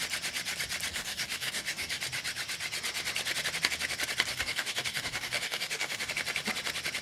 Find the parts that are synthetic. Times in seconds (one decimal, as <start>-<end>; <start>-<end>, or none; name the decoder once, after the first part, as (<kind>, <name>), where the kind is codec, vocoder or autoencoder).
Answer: 0.9-2.0 (codec, DAC); 4.3-6.1